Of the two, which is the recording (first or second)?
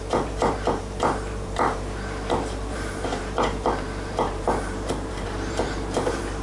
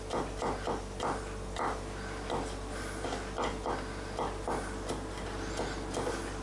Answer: second